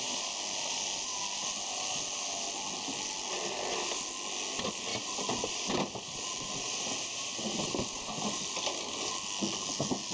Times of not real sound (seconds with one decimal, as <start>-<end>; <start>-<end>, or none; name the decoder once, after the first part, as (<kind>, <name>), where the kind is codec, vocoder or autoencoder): 4.9-9.4 (vocoder, BigVGAN v2)